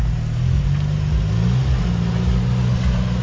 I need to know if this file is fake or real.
real